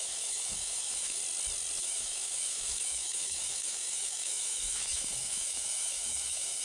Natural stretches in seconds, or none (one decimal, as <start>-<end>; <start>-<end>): 1.2-1.8